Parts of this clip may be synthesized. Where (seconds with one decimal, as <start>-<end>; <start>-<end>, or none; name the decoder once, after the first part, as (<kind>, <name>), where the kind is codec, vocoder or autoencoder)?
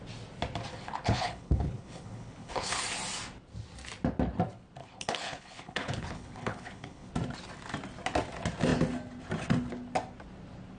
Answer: 0.7-2.8 (codec, HILCodec); 4.8-7.1